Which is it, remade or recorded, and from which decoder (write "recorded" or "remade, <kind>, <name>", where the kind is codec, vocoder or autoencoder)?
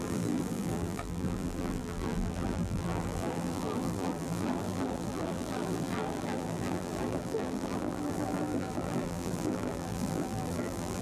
remade, vocoder, BigVGAN v2